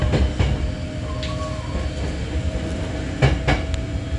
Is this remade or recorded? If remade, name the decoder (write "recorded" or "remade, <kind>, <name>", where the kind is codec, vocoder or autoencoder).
recorded